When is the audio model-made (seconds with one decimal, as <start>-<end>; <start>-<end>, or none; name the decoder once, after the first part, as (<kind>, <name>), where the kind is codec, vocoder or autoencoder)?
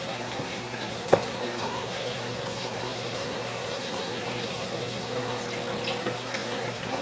0.0-5.4 (codec, SNAC); 6.0-7.0